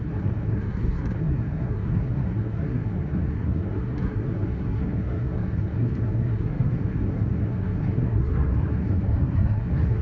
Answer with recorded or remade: remade